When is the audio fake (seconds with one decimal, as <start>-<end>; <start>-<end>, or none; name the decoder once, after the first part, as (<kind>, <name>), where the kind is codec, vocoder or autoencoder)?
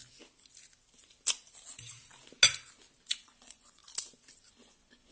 3.1-3.8 (vocoder, Vocos); 4.5-5.1